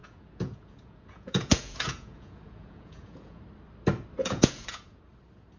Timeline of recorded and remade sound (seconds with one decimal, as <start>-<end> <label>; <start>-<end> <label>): 0.0-3.4 remade; 3.4-4.2 recorded; 4.2-5.0 remade; 5.0-5.6 recorded

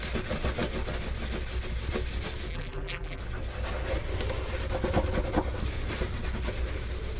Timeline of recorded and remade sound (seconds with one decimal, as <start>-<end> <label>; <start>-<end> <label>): 0.0-2.5 recorded; 2.5-3.2 remade; 3.2-7.2 recorded

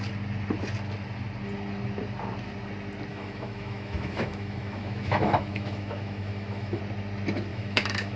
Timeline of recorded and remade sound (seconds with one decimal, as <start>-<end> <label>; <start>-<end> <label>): 0.0-3.1 recorded; 3.1-6.8 remade; 6.8-7.5 recorded; 7.5-8.2 remade

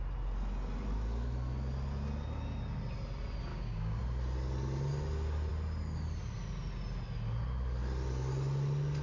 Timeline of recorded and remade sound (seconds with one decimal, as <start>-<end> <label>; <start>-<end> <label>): 0.0-3.5 recorded; 3.5-4.0 remade; 4.0-9.0 recorded